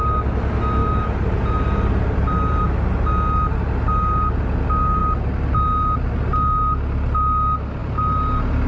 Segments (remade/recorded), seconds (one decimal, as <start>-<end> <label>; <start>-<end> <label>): 0.0-0.8 recorded; 0.8-2.6 remade; 2.6-7.8 recorded; 7.8-8.7 remade